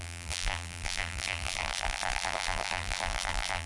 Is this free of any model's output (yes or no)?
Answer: no